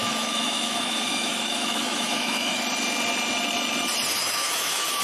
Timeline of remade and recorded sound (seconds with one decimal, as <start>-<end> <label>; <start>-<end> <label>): 0.0-2.6 remade; 2.6-4.2 recorded; 4.2-5.0 remade